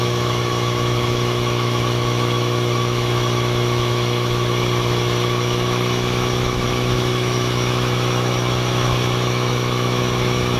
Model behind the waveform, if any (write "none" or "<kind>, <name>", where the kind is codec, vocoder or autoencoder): autoencoder, DAC-VAE